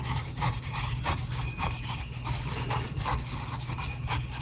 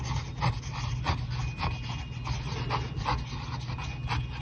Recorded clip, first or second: second